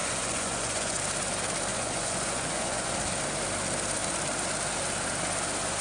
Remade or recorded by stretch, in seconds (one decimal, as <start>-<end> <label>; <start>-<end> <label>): 0.0-1.0 remade; 1.0-1.7 recorded; 1.7-2.9 remade; 2.9-5.8 recorded